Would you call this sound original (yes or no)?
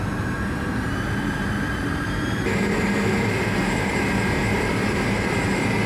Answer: no